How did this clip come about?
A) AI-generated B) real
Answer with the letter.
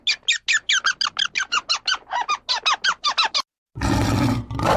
B